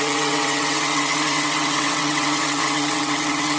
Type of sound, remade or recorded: remade